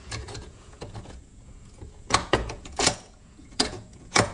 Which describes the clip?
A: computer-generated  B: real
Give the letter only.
A